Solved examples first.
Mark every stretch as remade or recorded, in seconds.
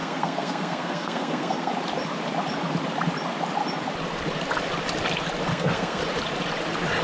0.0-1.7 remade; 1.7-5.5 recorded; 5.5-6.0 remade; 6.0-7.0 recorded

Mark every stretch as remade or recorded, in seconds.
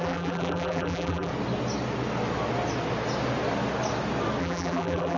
0.0-1.3 remade; 1.3-4.4 recorded; 4.4-5.2 remade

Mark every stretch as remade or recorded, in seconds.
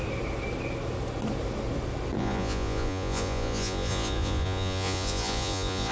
0.0-2.2 recorded; 2.2-5.9 remade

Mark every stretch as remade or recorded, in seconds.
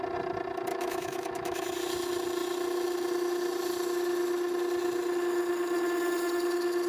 0.0-0.7 recorded; 0.7-1.8 remade; 1.8-6.9 recorded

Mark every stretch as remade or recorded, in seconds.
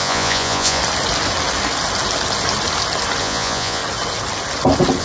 0.0-0.8 remade; 0.8-3.2 recorded; 3.2-3.8 remade; 3.8-5.0 recorded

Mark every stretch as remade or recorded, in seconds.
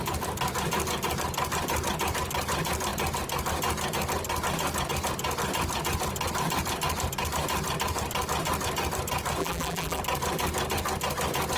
0.0-9.4 recorded; 9.4-10.0 remade; 10.0-11.6 recorded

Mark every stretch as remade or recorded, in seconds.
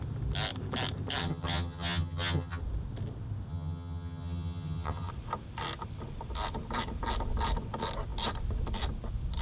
0.0-1.2 recorded; 1.2-2.6 remade; 2.6-3.5 recorded; 3.5-5.1 remade; 5.1-9.4 recorded